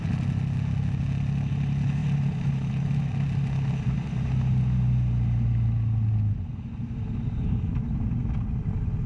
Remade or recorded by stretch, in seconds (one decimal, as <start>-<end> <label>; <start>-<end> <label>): 0.0-2.0 recorded; 2.0-2.7 remade; 2.7-9.1 recorded